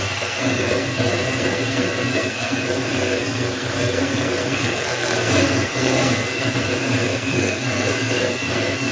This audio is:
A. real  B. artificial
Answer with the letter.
B